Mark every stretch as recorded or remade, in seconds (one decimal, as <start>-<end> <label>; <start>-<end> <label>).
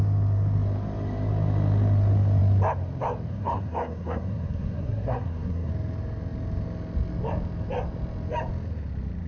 0.0-3.3 recorded; 3.3-5.7 remade; 5.7-9.3 recorded